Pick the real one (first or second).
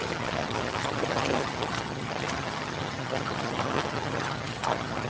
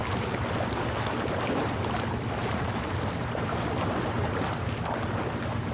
second